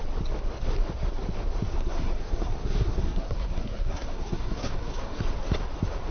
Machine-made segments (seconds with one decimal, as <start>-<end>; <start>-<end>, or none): 1.7-5.2